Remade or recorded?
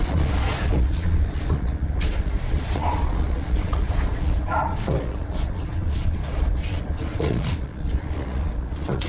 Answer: remade